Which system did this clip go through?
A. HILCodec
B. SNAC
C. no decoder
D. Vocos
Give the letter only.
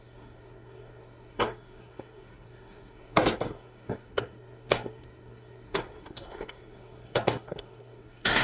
B